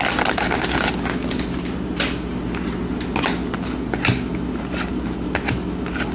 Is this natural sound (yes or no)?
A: yes